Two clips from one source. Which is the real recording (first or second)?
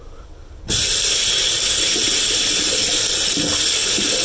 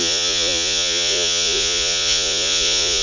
first